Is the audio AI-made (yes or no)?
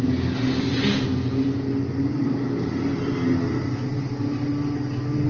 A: no